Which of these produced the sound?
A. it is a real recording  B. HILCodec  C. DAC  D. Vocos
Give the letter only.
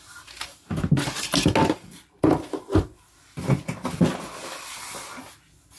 A